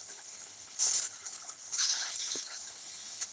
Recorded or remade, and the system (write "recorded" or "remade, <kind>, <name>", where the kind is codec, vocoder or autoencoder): remade, codec, HILCodec